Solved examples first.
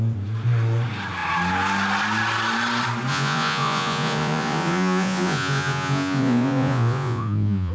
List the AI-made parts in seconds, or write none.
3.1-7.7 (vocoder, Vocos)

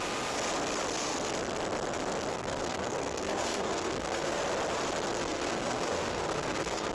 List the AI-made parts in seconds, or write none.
2.3-4.4 (codec, SNAC); 5.2-6.9

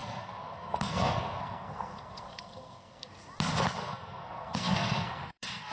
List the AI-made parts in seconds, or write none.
0.0-3.1 (codec, SNAC); 3.8-5.7

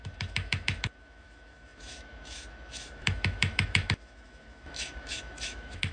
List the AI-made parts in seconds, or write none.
0.0-5.9 (autoencoder, DAC-VAE)

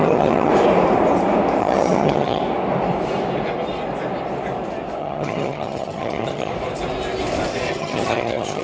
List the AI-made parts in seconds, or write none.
0.0-0.5 (vocoder, HiFi-GAN); 1.6-2.4; 5.0-6.5; 7.7-8.6